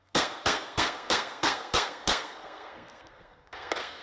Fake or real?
fake